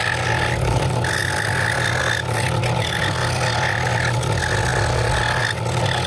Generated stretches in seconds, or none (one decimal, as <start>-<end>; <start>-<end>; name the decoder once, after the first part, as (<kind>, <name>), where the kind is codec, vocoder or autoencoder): none